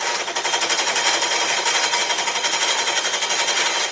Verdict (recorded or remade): recorded